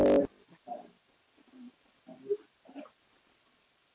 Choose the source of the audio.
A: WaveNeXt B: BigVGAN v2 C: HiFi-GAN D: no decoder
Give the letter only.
D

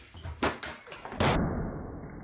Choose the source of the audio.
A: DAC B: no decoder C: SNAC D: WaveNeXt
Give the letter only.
B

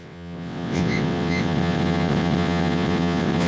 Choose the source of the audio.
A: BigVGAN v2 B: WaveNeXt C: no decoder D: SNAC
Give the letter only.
B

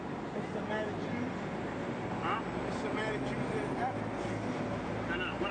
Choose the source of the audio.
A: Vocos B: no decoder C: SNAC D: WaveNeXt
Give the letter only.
B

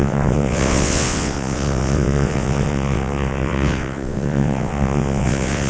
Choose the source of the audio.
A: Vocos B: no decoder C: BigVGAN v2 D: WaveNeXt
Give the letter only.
D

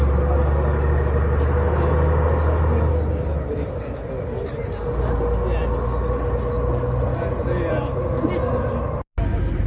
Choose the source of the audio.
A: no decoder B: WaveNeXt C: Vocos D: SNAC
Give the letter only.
A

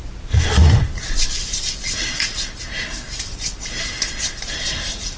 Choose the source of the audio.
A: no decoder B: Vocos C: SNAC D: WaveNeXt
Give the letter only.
A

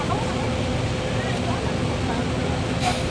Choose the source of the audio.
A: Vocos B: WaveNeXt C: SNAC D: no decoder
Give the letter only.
D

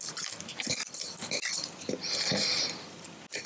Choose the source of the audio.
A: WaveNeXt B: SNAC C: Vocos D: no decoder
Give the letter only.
D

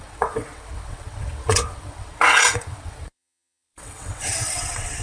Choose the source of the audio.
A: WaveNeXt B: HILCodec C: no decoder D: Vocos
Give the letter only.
A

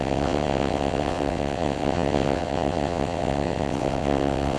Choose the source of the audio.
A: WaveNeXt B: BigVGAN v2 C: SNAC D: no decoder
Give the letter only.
A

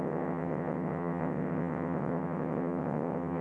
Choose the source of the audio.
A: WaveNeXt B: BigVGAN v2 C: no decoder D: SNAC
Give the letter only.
A